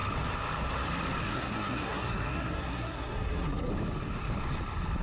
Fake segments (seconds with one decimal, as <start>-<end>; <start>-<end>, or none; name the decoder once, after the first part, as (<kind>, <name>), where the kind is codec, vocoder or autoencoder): 1.2-3.7 (codec, SNAC)